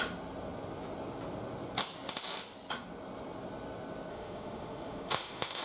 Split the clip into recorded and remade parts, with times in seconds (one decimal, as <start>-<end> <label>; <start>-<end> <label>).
0.0-4.1 recorded; 4.1-5.6 remade